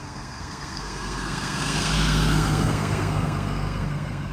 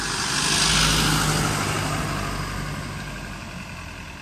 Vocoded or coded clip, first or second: first